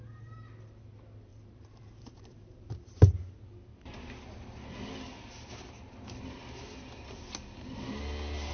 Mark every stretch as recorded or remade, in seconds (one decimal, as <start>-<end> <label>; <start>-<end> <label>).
0.0-1.3 recorded; 1.3-3.0 remade; 3.0-8.5 recorded